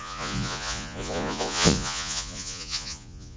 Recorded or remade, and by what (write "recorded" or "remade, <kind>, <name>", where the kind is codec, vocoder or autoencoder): remade, vocoder, Vocos